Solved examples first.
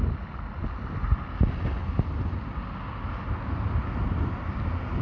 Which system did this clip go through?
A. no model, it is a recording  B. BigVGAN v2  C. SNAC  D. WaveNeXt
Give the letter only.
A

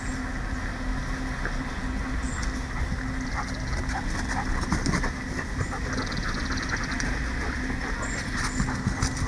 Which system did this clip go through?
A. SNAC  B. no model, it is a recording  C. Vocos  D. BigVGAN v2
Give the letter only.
B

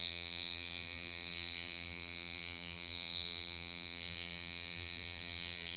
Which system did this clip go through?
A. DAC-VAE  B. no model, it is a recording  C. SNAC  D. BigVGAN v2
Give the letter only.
D